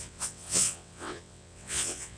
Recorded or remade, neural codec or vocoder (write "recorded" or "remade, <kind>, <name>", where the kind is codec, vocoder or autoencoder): remade, vocoder, WaveNeXt